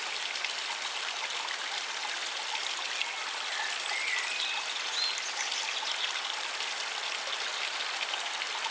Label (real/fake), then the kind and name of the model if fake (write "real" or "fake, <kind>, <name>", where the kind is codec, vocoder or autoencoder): real